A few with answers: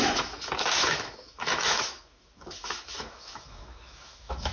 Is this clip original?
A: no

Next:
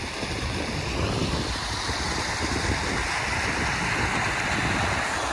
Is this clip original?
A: yes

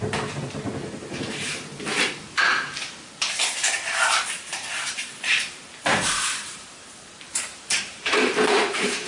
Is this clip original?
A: no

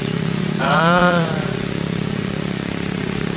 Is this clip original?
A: no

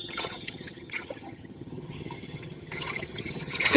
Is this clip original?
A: no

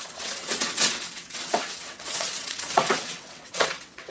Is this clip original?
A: no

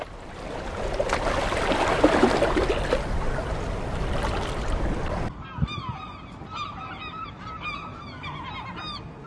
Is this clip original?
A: yes